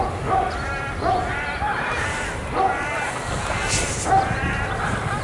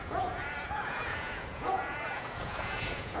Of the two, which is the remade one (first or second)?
second